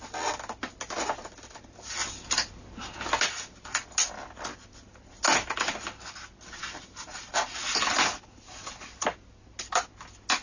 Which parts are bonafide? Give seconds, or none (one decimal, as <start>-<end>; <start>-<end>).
0.0-10.4